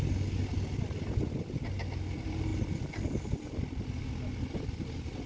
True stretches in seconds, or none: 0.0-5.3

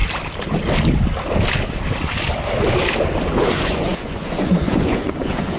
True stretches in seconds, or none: 0.0-3.4